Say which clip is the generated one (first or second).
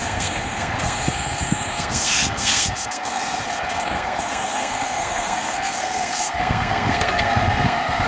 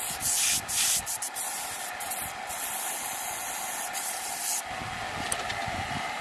first